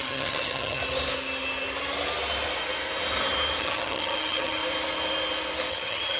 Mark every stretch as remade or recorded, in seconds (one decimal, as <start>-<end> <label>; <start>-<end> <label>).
0.0-0.8 remade; 0.8-3.6 recorded; 3.6-4.6 remade; 4.6-5.7 recorded; 5.7-6.2 remade